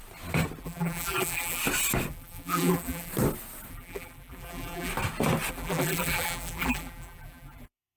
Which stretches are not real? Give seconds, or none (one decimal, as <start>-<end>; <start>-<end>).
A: 0.6-1.6; 2.1-3.1; 3.7-4.9; 5.5-8.0